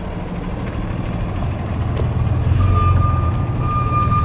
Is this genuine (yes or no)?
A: yes